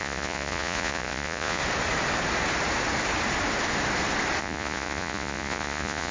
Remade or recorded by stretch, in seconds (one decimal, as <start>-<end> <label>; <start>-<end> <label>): 0.0-1.6 remade; 1.6-4.4 recorded; 4.4-6.1 remade